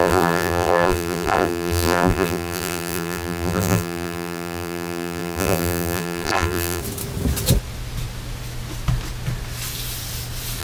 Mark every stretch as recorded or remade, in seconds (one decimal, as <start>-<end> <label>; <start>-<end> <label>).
0.0-6.8 remade; 6.8-10.6 recorded